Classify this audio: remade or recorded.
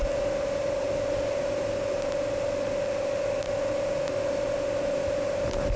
recorded